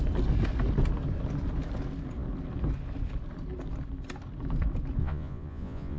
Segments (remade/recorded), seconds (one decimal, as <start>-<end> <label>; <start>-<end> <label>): 0.0-5.0 recorded; 5.0-6.0 remade